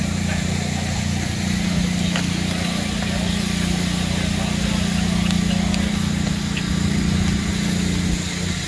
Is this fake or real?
real